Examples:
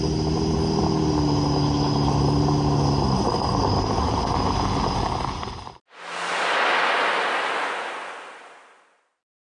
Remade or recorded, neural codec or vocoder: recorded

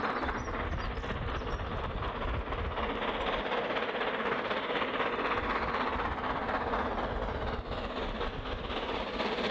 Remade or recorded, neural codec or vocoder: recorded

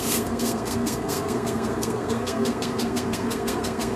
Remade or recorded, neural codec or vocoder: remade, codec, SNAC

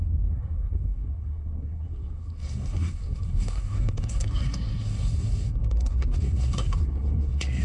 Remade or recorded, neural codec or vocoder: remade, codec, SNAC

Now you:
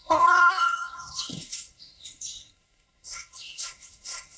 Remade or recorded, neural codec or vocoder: remade, codec, SNAC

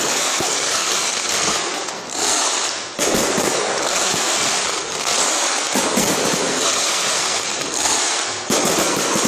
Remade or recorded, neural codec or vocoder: remade, codec, SNAC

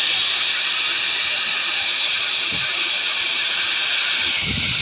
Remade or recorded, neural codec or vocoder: recorded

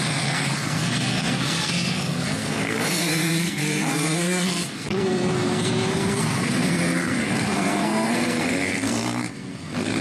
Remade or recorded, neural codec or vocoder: remade, codec, SNAC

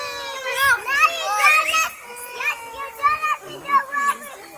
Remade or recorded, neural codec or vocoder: recorded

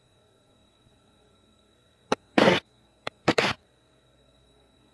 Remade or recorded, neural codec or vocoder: remade, codec, SNAC